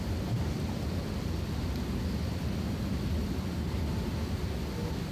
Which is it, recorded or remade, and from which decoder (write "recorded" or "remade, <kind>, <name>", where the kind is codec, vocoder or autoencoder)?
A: recorded